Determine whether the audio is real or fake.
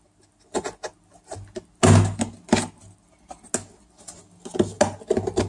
real